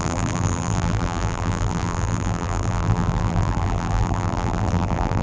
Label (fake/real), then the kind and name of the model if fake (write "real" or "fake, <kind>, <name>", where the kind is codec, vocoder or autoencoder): fake, vocoder, BigVGAN v2